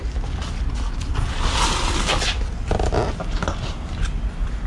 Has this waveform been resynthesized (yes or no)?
no